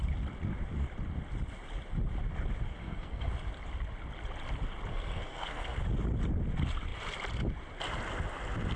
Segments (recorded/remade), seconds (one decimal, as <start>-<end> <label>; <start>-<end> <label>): 0.0-2.8 recorded; 2.8-3.3 remade; 3.3-4.9 recorded; 4.9-5.8 remade; 5.8-8.8 recorded

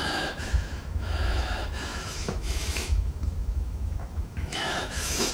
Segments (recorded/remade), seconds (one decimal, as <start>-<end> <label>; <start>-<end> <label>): 0.0-5.3 remade

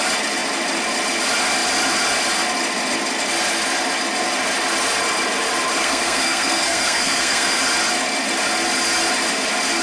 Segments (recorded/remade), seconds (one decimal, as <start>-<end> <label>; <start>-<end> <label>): 0.0-5.8 recorded; 5.8-7.6 remade; 7.6-9.8 recorded

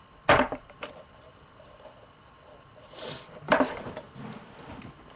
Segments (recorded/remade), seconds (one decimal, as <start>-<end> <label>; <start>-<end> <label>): 0.0-5.2 recorded

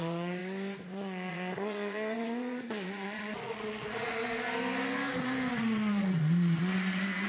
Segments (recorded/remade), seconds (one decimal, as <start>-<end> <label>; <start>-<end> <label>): 0.0-0.4 remade; 0.4-1.3 recorded; 1.3-4.2 remade; 4.2-5.5 recorded; 5.5-7.3 remade

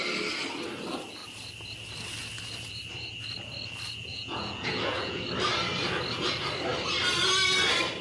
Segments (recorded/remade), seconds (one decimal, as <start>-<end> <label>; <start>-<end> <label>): 0.0-4.1 recorded; 4.1-5.2 remade; 5.2-8.0 recorded